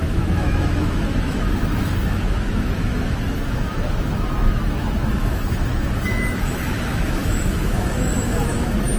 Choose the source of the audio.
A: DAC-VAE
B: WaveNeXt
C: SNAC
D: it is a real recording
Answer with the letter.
A